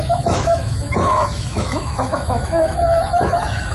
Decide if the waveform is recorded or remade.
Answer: remade